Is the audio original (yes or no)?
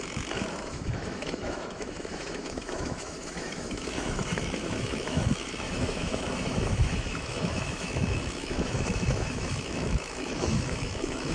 no